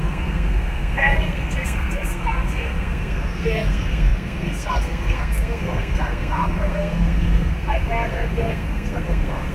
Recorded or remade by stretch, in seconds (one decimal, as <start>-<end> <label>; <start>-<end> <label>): 0.0-9.5 remade